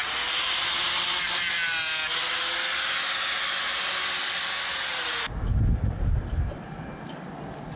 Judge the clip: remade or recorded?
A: recorded